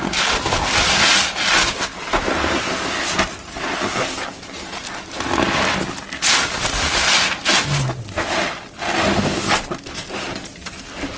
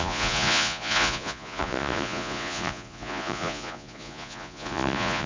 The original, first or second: first